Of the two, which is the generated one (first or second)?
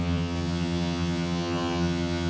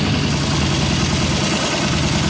first